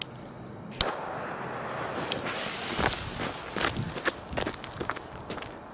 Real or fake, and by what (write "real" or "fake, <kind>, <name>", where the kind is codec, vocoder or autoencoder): real